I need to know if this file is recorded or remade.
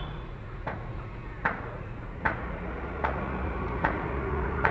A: remade